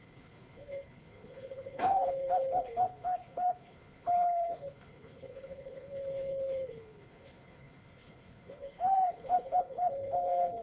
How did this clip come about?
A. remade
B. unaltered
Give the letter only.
A